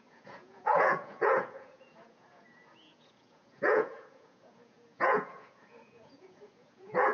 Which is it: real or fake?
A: fake